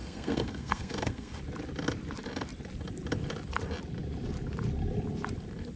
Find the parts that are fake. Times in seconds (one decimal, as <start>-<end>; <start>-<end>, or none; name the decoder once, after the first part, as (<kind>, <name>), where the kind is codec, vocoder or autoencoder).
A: 0.0-1.4 (codec, SNAC)